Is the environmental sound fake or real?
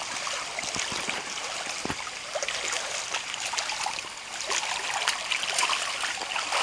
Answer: real